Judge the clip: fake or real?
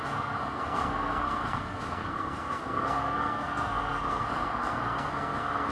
fake